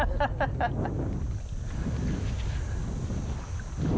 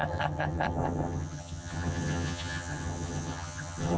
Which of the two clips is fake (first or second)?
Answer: second